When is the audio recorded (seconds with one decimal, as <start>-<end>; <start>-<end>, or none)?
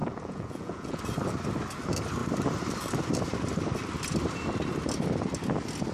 1.0-5.9